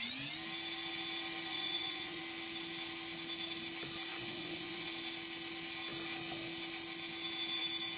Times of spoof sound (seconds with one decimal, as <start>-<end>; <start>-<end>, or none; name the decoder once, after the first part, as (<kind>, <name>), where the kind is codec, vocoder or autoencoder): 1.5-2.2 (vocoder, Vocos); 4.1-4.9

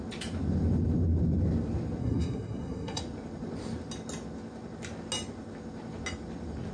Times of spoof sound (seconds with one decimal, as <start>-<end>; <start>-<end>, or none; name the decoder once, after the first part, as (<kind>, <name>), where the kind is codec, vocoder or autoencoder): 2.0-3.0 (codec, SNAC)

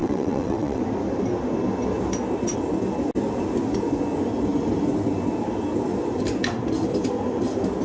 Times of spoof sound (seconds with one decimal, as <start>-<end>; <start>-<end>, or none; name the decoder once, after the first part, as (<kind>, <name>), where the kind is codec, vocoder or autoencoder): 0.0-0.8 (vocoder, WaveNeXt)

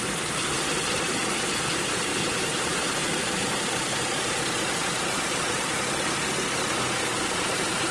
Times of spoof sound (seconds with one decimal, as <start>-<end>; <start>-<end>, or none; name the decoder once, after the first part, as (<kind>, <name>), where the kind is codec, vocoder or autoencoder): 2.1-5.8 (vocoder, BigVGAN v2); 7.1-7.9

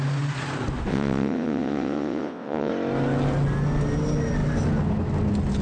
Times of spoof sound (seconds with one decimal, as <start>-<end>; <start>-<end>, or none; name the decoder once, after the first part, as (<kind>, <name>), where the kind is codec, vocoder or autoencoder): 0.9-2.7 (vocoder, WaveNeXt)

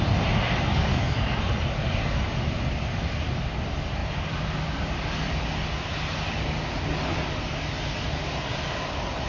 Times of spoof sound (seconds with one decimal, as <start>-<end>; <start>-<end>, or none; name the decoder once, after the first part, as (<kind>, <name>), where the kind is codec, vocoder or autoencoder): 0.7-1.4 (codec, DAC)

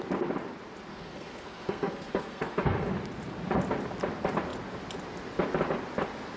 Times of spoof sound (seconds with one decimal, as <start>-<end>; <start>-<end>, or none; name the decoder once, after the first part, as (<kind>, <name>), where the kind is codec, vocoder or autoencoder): 0.9-2.9 (codec, SNAC)

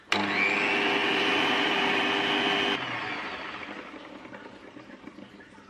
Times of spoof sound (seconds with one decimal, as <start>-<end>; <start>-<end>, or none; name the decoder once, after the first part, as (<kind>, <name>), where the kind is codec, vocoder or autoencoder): 1.0-2.1 (vocoder, BigVGAN v2)